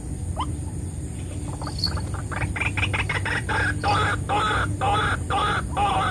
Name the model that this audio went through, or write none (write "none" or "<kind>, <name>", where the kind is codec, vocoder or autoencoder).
none